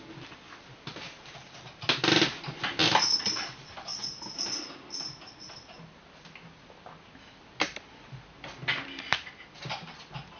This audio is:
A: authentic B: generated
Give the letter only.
A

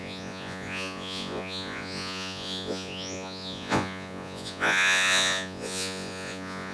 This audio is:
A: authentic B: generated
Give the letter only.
B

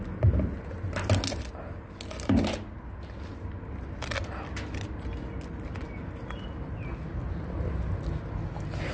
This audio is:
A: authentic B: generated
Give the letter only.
A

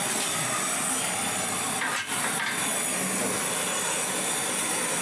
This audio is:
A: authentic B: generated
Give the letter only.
A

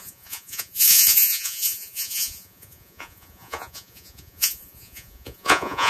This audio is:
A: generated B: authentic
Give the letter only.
A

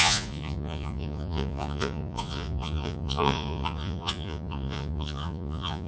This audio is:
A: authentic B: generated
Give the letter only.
B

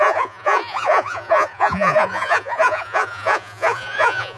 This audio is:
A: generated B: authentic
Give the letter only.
A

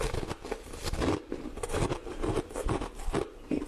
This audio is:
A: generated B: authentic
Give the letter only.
B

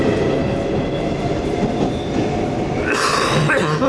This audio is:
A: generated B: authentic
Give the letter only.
B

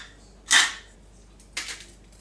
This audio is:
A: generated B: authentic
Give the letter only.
B